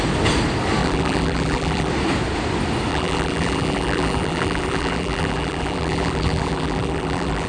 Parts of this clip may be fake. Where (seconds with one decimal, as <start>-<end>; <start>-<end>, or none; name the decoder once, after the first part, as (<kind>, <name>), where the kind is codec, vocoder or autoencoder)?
0.8-1.9 (vocoder, BigVGAN v2); 2.9-7.5